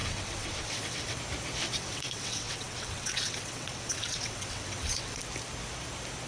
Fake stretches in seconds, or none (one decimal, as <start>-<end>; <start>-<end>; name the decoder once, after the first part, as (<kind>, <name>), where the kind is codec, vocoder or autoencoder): 0.0-1.2 (vocoder, WaveNeXt); 1.6-5.2